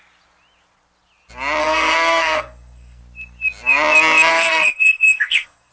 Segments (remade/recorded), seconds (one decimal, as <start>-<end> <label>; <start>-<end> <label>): 0.0-1.6 recorded; 1.6-3.0 remade; 3.0-4.3 recorded; 4.3-5.7 remade